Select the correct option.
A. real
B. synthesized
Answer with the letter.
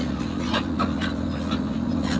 B